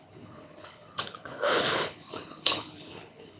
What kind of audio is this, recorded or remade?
remade